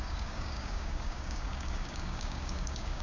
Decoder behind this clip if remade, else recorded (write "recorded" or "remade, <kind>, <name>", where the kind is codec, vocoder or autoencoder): remade, codec, DAC